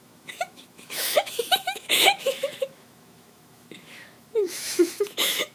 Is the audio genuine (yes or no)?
no